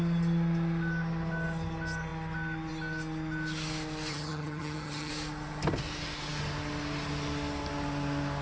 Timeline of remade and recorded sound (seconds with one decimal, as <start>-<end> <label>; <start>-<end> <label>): 0.0-4.1 recorded; 4.1-5.1 remade; 5.1-8.4 recorded